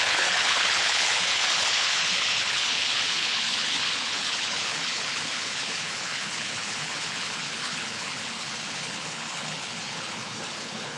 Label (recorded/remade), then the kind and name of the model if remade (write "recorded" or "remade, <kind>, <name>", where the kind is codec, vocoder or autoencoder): remade, codec, HILCodec